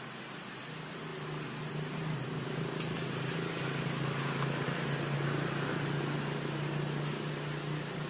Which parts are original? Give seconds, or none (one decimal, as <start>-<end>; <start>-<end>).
0.0-8.1